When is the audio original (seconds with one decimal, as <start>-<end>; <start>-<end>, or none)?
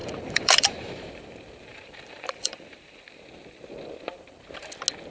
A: 1.1-1.7; 3.0-5.1